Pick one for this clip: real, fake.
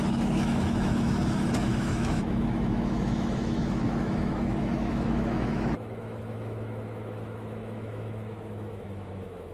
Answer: fake